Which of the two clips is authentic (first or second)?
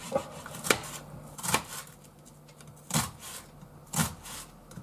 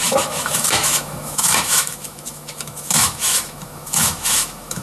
first